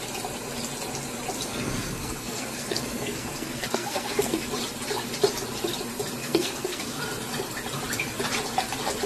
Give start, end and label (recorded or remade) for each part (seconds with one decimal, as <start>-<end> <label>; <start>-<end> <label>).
0.0-1.5 recorded; 1.5-4.5 remade; 4.5-6.2 recorded; 6.2-7.0 remade; 7.0-9.1 recorded